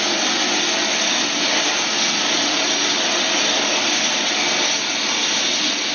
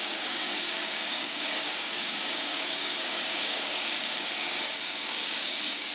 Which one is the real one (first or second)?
first